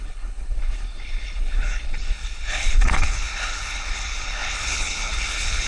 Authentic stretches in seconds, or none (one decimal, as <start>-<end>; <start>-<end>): none